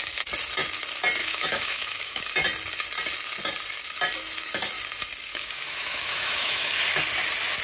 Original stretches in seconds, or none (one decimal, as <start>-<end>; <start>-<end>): 0.0-1.2; 2.2-5.3; 6.7-7.6